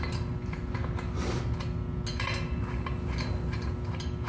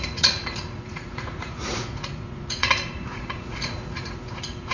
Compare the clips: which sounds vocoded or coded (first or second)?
second